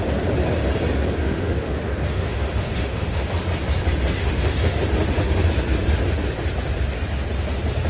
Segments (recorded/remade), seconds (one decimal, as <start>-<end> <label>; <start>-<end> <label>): 0.0-1.2 recorded; 1.2-3.2 remade; 3.2-4.2 recorded; 4.2-4.8 remade; 4.8-7.9 recorded